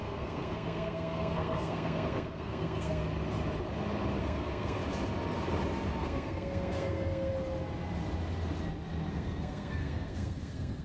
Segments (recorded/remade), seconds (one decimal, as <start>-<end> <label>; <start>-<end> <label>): 0.0-3.0 remade; 3.0-4.2 recorded; 4.2-4.8 remade; 4.8-6.0 recorded; 6.0-7.3 remade; 7.3-9.1 recorded; 9.1-10.8 remade